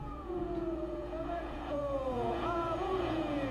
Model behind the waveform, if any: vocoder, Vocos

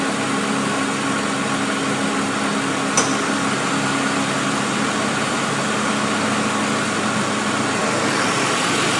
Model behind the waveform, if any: none